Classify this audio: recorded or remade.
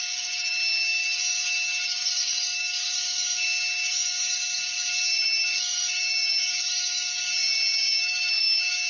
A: remade